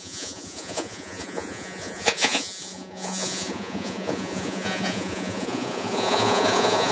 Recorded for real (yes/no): no